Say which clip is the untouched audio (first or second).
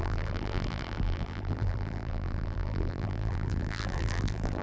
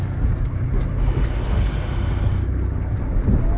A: second